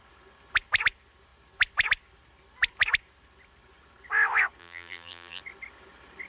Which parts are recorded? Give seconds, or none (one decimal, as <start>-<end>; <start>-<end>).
0.0-4.6; 5.4-6.3